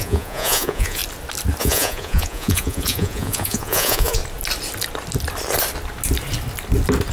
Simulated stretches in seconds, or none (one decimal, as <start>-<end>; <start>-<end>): 0.0-1.0; 1.6-4.2